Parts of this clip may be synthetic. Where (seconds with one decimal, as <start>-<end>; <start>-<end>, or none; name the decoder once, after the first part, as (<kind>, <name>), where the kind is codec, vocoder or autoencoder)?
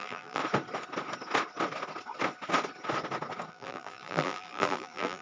0.0-0.4 (vocoder, BigVGAN v2); 3.5-5.2